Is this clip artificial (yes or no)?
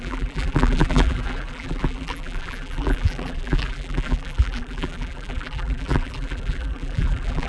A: yes